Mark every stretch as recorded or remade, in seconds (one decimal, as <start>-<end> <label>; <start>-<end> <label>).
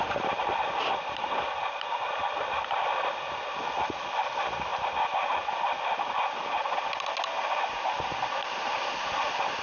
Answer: 0.0-9.6 recorded